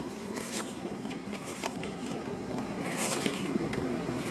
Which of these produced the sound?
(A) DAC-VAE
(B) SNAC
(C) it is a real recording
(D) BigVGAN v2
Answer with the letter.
B